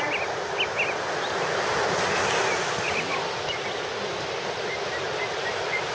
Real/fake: real